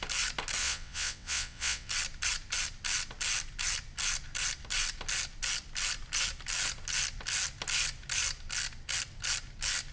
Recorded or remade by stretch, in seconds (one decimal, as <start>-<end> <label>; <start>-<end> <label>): 0.0-0.6 recorded; 0.6-1.9 remade; 1.9-9.9 recorded